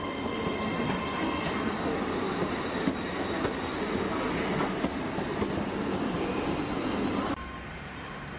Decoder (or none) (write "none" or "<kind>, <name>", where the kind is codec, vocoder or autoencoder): none